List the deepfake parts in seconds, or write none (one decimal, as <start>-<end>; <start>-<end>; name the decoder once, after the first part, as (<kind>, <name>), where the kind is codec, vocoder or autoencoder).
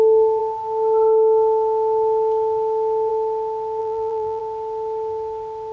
3.8-4.4 (vocoder, BigVGAN v2)